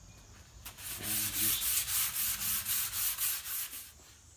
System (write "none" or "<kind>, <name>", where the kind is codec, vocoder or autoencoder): none